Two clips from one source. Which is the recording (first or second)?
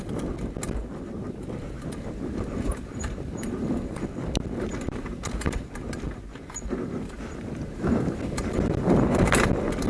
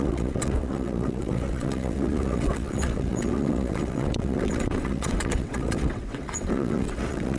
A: first